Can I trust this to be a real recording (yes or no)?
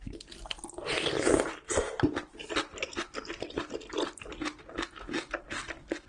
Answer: yes